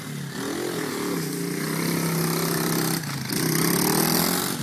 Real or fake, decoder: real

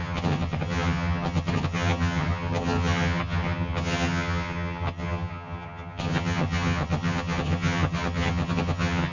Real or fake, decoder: fake, vocoder, HiFi-GAN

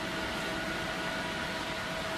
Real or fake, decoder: real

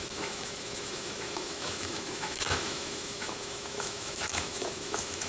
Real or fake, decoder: fake, autoencoder, DAC-VAE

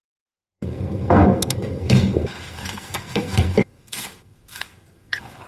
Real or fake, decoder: fake, codec, SNAC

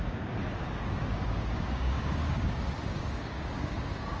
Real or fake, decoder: fake, codec, DAC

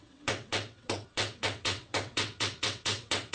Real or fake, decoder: fake, vocoder, WaveNeXt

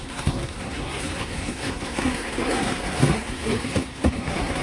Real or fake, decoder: fake, codec, SNAC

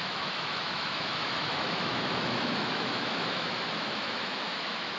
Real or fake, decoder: fake, autoencoder, DAC-VAE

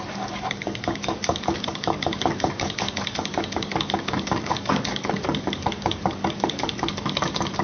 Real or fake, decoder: fake, codec, DAC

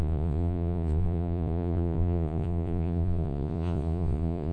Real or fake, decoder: fake, vocoder, Vocos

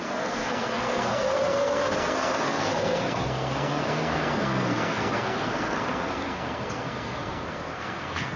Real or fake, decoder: fake, codec, SNAC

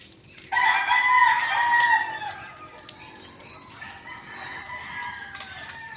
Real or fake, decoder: real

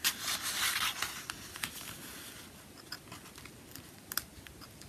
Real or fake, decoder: real